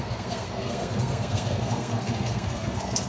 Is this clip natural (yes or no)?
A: no